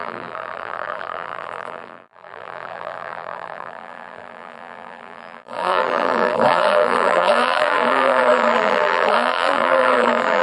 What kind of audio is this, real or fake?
fake